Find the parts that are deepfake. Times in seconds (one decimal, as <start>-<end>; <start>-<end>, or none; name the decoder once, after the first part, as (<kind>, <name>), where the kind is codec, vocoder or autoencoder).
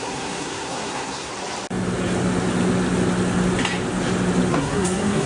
0.0-1.3 (codec, SNAC); 4.5-5.3